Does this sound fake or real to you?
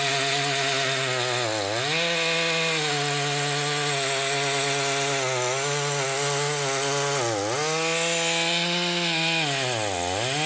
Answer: real